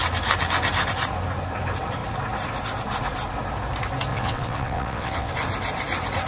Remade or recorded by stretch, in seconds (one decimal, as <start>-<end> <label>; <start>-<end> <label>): 0.0-4.1 recorded; 4.1-5.3 remade; 5.3-6.3 recorded